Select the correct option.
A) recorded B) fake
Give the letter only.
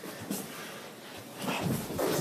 A